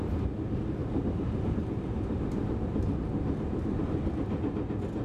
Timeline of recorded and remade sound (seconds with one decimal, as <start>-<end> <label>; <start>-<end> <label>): 0.0-0.8 recorded; 0.8-1.5 remade; 1.5-5.0 recorded